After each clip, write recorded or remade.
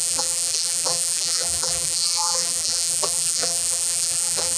remade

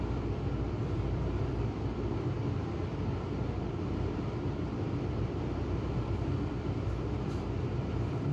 remade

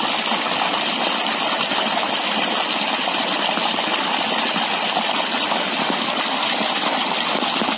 remade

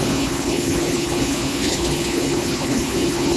remade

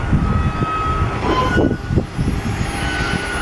recorded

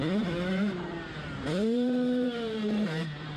remade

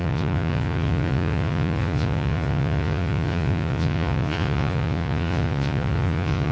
remade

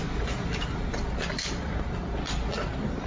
recorded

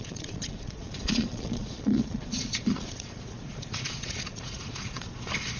remade